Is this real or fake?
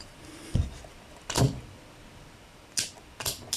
real